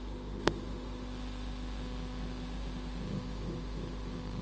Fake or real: fake